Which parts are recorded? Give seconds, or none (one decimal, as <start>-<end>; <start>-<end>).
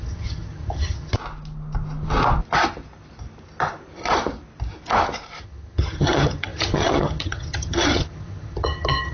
1.1-5.4